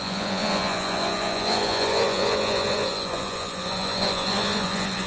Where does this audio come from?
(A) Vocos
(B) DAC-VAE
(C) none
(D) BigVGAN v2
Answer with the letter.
A